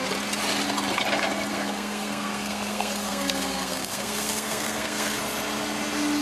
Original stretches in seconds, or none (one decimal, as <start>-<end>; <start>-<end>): 0.0-1.5; 5.2-6.2